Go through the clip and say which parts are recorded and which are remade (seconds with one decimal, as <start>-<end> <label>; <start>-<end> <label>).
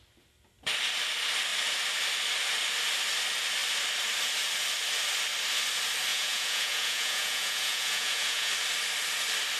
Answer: 0.0-6.1 recorded; 6.1-8.5 remade; 8.5-9.6 recorded